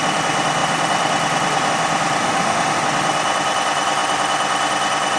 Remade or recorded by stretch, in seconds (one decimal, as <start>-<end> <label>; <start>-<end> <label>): 0.0-2.2 recorded; 2.2-2.8 remade; 2.8-5.2 recorded